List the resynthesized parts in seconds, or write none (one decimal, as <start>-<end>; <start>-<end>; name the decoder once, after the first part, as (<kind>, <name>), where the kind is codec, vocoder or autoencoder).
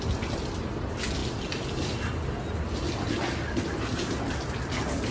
none